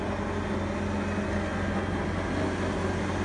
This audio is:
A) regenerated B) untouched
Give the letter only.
B